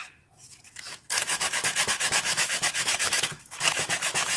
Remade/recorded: remade